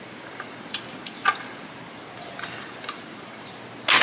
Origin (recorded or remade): recorded